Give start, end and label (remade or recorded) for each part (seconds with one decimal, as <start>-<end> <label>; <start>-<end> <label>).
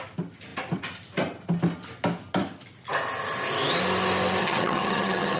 0.0-4.4 recorded; 4.4-5.4 remade